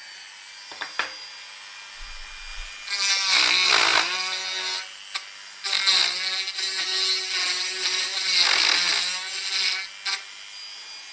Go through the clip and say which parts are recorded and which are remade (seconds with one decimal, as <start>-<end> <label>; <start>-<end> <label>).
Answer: 0.0-11.1 recorded